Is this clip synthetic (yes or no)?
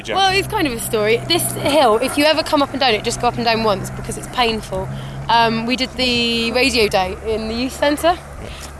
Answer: no